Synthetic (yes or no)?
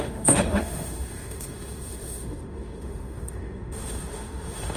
yes